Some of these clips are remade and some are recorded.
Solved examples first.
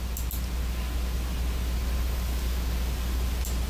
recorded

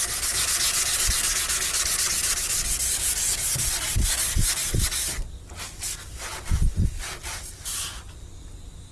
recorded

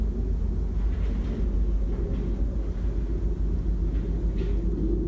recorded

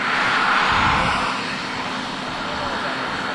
recorded